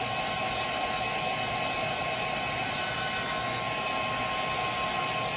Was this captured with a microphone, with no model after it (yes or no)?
yes